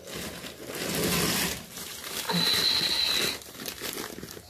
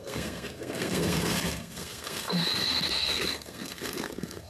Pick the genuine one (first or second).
first